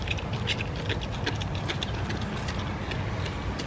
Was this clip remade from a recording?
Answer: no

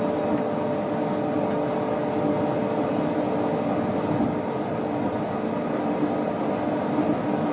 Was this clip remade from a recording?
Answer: no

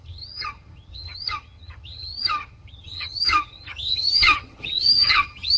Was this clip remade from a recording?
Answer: yes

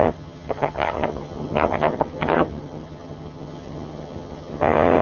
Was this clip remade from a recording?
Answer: yes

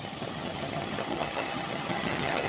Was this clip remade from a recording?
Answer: yes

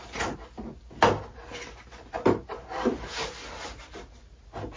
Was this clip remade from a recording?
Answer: no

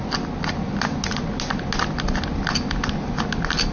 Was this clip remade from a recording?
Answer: no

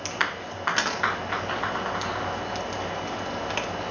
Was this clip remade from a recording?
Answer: no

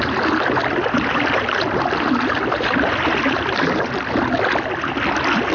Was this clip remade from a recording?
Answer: no